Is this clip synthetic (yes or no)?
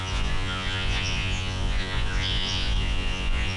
yes